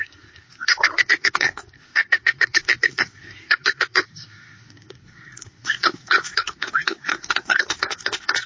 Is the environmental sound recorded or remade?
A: remade